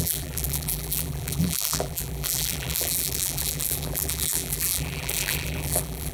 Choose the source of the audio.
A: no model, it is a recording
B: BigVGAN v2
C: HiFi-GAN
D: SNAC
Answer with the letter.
B